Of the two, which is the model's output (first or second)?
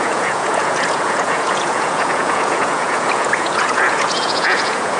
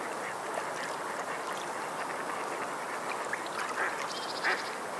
first